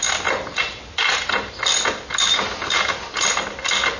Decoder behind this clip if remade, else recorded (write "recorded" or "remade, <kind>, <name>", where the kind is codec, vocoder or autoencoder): recorded